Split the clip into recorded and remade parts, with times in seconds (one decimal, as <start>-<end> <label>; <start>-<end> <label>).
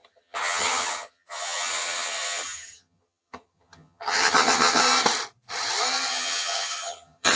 0.0-4.8 remade; 4.8-6.1 recorded; 6.1-7.4 remade